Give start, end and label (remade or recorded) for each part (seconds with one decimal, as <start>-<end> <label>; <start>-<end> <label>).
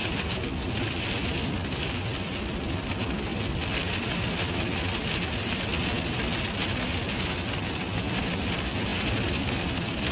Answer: 0.0-1.1 remade; 1.1-10.1 recorded